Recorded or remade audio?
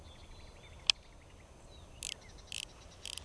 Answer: recorded